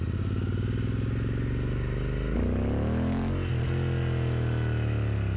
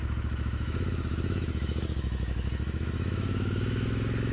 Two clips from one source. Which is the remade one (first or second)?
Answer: second